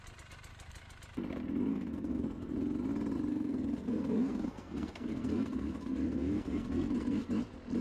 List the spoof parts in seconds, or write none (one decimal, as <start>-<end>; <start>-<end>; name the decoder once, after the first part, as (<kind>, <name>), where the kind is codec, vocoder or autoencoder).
1.7-2.5 (codec, SNAC); 3.3-7.3